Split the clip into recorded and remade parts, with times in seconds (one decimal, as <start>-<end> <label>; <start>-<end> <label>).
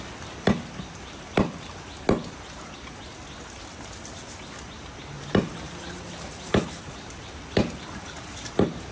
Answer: 0.0-8.9 recorded